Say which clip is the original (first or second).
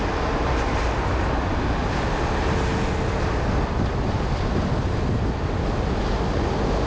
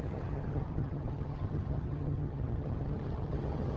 first